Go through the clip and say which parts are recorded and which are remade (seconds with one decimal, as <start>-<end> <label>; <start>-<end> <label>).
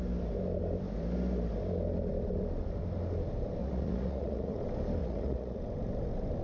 0.0-3.6 recorded; 3.6-4.6 remade; 4.6-5.0 recorded; 5.0-5.6 remade; 5.6-6.4 recorded